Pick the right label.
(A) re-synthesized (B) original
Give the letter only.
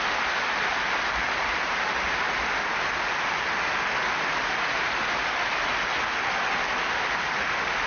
B